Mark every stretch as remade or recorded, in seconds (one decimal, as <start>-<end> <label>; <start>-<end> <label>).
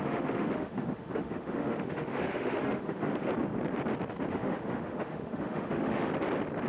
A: 0.0-3.3 remade; 3.3-4.3 recorded; 4.3-6.1 remade; 6.1-6.7 recorded